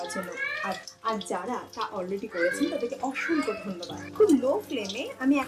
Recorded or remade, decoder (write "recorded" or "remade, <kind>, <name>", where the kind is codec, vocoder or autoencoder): recorded